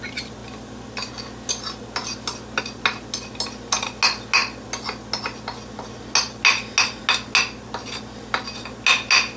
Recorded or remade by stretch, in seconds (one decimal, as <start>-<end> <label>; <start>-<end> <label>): 0.0-9.4 recorded